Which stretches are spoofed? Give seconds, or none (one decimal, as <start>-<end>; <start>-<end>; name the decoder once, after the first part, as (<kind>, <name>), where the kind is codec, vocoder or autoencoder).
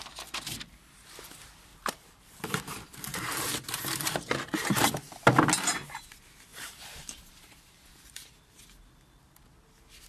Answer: 1.7-2.4 (vocoder, BigVGAN v2); 3.1-5.1; 6.5-8.6